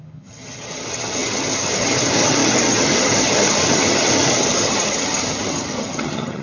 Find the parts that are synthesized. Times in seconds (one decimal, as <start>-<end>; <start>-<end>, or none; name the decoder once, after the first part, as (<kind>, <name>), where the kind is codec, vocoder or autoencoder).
0.0-6.4 (vocoder, HiFi-GAN)